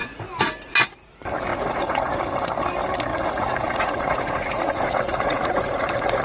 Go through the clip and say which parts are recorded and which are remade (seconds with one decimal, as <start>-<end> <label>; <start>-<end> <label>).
0.0-1.5 recorded; 1.5-2.2 remade; 2.2-3.1 recorded; 3.1-6.2 remade

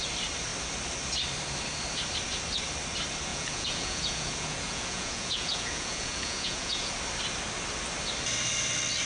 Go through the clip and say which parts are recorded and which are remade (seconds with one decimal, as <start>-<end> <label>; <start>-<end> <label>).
0.0-3.3 recorded; 3.3-6.9 remade; 6.9-9.1 recorded

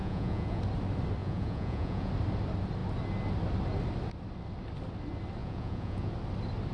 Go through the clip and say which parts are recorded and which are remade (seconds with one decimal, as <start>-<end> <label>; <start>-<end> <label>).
0.0-0.6 remade; 0.6-1.2 recorded; 1.2-2.1 remade; 2.1-5.4 recorded; 5.4-6.1 remade; 6.1-6.7 recorded

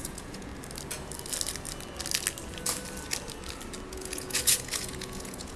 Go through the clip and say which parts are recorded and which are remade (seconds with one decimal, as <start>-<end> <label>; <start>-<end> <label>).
0.0-0.5 remade; 0.5-3.9 recorded; 3.9-5.6 remade

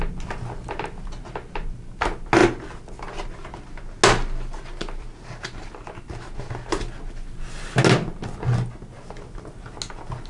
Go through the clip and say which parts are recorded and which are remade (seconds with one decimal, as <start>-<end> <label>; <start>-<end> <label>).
0.0-10.3 recorded

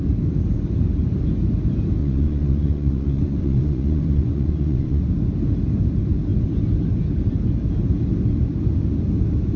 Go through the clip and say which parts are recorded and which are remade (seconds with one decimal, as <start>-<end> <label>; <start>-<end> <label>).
0.0-2.0 recorded; 2.0-5.0 remade; 5.0-9.6 recorded

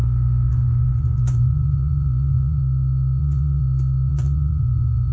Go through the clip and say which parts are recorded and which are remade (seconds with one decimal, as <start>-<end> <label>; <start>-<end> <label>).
0.0-0.5 recorded; 0.5-2.6 remade; 2.6-3.2 recorded; 3.2-3.6 remade; 3.6-4.1 recorded; 4.1-5.1 remade